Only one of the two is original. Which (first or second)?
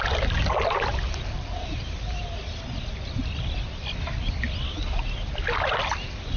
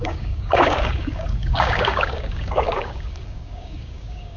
first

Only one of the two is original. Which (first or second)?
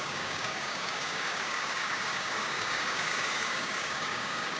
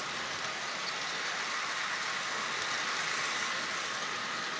second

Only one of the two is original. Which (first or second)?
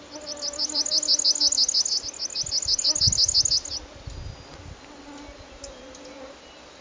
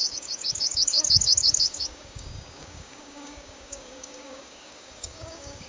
first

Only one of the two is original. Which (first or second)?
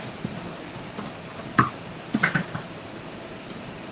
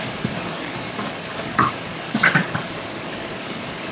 first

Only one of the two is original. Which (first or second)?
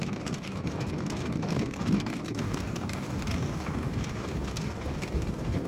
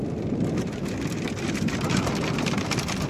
second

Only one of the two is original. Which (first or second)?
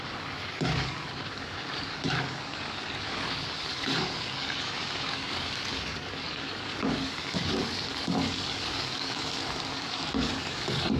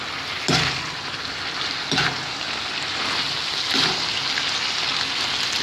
second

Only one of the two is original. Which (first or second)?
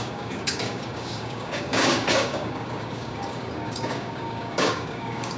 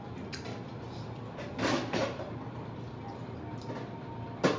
second